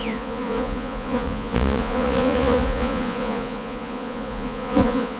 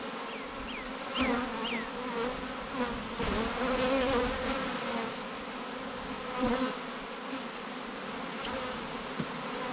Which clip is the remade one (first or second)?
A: first